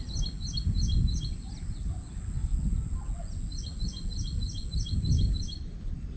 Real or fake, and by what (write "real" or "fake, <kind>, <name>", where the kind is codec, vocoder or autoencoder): real